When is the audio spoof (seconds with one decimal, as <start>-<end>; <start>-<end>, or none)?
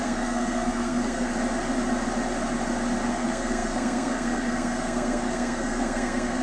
0.0-1.3; 3.1-6.4